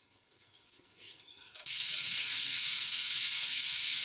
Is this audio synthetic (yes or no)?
yes